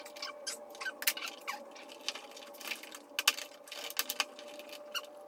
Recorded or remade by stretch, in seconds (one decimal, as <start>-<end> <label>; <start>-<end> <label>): 0.0-5.3 recorded